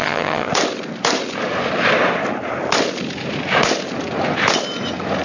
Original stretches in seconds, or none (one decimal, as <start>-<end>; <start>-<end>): 0.5-5.2